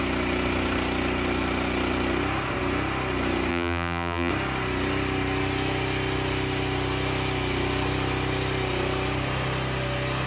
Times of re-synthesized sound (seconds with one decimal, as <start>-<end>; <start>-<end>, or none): 3.5-4.3